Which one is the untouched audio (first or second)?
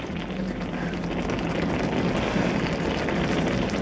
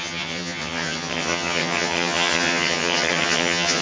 first